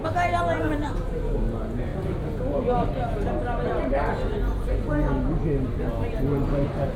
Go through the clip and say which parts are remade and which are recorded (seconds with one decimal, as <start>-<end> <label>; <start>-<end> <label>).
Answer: 0.0-7.0 recorded